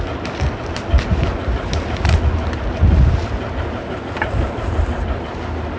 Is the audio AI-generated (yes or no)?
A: no